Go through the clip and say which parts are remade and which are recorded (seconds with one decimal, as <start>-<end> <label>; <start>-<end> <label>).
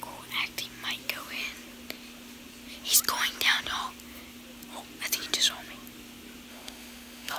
0.0-6.5 recorded; 6.5-7.4 remade